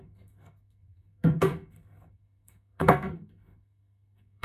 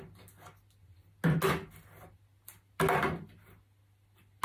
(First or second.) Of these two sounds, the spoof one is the first